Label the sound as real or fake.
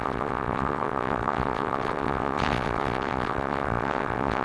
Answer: fake